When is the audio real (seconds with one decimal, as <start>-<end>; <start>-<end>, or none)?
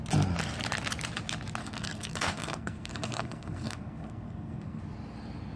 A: 0.0-1.6; 4.8-5.6